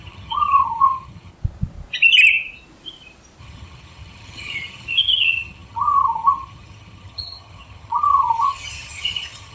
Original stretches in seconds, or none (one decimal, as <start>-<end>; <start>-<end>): 1.3-3.4